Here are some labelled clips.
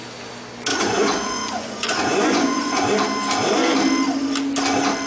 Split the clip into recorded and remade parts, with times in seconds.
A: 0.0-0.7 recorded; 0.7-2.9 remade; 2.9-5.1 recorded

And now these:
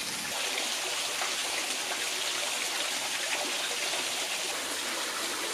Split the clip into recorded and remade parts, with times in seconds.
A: 0.0-5.5 recorded